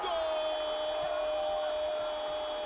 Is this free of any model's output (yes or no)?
yes